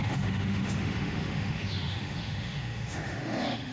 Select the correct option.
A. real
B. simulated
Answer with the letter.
B